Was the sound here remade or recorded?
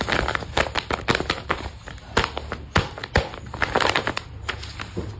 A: recorded